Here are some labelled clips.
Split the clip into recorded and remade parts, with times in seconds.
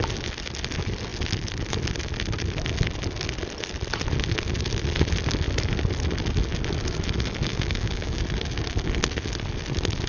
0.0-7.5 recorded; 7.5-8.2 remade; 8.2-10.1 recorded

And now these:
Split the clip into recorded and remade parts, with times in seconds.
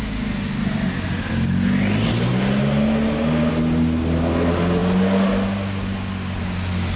0.0-7.0 recorded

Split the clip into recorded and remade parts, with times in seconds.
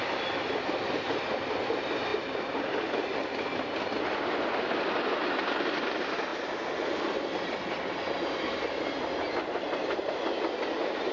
0.0-11.1 recorded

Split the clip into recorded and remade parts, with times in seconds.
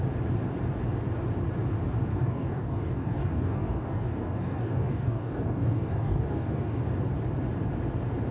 0.0-2.1 recorded; 2.1-6.8 remade; 6.8-8.3 recorded